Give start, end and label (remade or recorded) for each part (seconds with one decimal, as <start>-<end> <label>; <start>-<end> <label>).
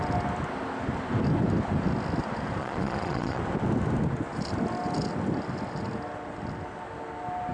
0.0-2.6 recorded; 2.6-3.4 remade; 3.4-7.5 recorded